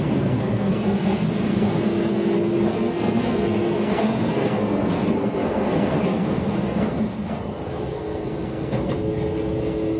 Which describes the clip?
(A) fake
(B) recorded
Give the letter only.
A